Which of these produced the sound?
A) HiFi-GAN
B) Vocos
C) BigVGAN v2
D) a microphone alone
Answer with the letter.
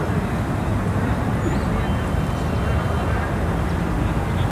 D